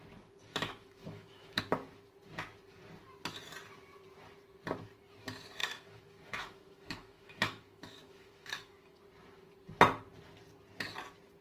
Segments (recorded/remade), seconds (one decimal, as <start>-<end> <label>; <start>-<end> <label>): 0.0-0.5 recorded; 0.5-1.6 remade; 1.6-5.6 recorded; 5.6-9.0 remade; 9.0-11.4 recorded